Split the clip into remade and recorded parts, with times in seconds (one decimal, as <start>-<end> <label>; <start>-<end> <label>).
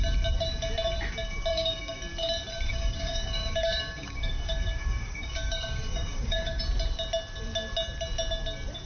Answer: 0.0-1.5 recorded; 1.5-2.0 remade; 2.0-2.7 recorded; 2.7-6.6 remade; 6.6-8.9 recorded